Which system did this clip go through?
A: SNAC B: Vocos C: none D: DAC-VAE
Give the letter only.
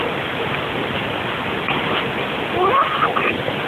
C